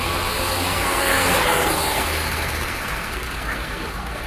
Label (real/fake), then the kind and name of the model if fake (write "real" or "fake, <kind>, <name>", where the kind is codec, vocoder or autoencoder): fake, codec, SNAC